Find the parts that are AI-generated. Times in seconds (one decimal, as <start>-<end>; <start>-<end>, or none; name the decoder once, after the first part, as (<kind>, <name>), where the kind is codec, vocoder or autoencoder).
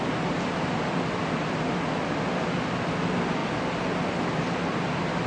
none